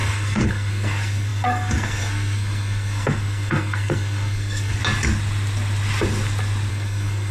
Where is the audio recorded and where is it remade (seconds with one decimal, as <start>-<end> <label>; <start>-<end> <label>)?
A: 0.0-4.8 remade; 4.8-6.7 recorded; 6.7-7.3 remade

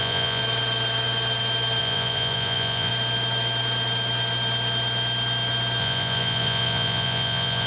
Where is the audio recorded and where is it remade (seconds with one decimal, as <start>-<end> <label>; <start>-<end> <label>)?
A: 0.0-0.4 remade; 0.4-1.8 recorded; 1.8-2.9 remade; 2.9-5.8 recorded; 5.8-7.7 remade

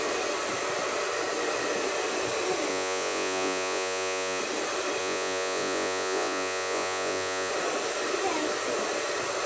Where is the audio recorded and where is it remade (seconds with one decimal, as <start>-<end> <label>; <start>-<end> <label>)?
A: 0.0-2.7 recorded; 2.7-4.4 remade; 4.4-5.0 recorded; 5.0-7.5 remade; 7.5-9.5 recorded

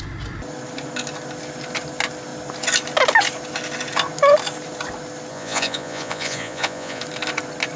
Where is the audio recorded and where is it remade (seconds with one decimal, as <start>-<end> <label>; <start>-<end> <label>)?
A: 0.0-5.3 recorded; 5.3-7.0 remade; 7.0-7.8 recorded

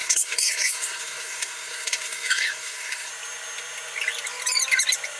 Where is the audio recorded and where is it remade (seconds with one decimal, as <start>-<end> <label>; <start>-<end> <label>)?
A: 0.0-3.1 remade; 3.1-5.2 recorded